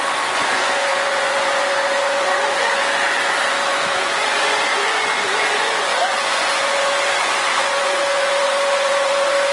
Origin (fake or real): fake